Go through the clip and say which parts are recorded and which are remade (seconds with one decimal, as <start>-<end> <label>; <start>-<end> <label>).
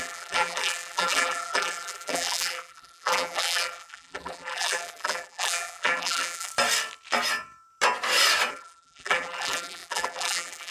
0.0-6.5 remade; 6.5-8.5 recorded; 8.5-10.7 remade